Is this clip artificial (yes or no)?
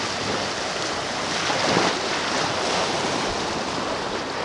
no